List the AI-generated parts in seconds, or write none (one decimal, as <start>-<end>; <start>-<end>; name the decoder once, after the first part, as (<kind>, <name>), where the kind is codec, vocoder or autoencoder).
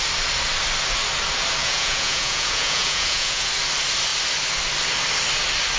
1.6-3.5 (vocoder, Vocos)